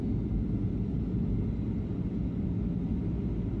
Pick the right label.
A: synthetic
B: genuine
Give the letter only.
B